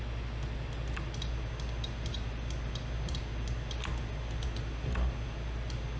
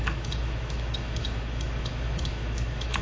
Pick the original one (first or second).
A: first